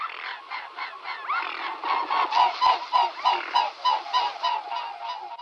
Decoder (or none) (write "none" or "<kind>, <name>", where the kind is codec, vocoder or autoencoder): none